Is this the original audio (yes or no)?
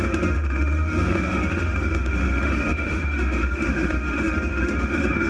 no